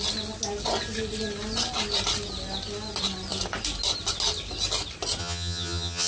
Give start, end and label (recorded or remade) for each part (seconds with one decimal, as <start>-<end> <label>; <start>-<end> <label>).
0.0-5.2 recorded; 5.2-6.1 remade